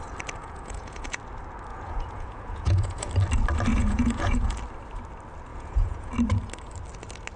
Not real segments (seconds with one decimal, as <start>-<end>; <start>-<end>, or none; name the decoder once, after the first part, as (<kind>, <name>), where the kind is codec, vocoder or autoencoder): 0.4-1.2 (vocoder, Vocos); 1.7-3.1; 3.7-4.5; 5.5-6.1